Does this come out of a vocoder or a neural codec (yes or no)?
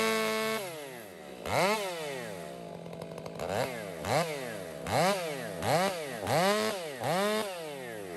no